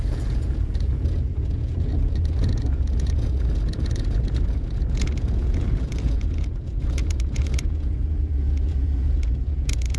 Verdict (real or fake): fake